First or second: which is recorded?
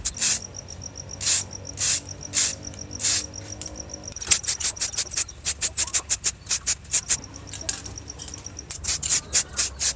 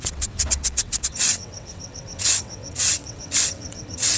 first